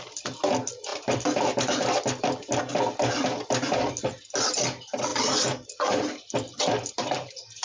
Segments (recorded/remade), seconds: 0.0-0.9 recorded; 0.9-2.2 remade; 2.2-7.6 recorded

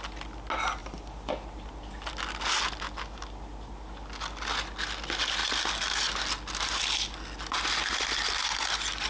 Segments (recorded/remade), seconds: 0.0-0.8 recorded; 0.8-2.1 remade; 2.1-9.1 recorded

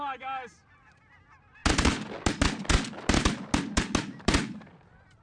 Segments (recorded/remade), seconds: 0.0-5.2 recorded

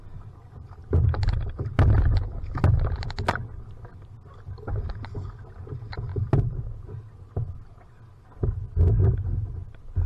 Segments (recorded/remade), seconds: 0.0-0.8 recorded; 0.8-1.6 remade; 1.6-10.1 recorded